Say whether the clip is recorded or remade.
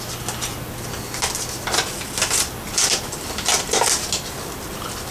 recorded